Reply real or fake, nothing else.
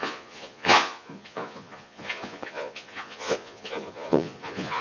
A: fake